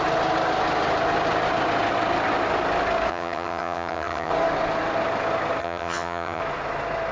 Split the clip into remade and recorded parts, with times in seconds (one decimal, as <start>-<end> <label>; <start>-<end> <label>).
0.0-3.1 recorded; 3.1-4.3 remade; 4.3-5.6 recorded; 5.6-6.4 remade; 6.4-7.1 recorded